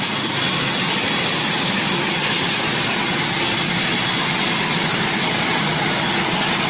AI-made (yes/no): no